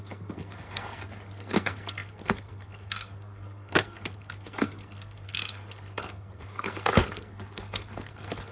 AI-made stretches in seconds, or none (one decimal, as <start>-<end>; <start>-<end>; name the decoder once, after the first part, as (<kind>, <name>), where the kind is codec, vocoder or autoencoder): 0.0-8.5 (codec, SNAC)